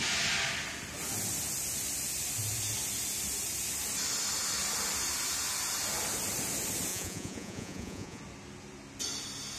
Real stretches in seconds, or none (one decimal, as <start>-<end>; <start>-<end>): 0.0-6.9; 8.2-9.6